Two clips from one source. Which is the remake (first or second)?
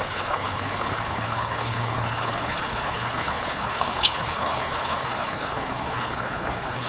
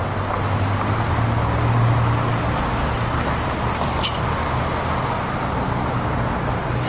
first